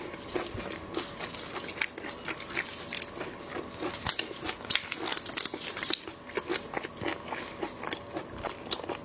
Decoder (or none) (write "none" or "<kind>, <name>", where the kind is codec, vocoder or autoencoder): none